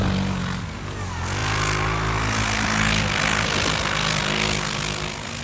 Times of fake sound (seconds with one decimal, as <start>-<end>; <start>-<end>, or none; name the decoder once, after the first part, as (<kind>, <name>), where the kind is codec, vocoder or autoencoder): none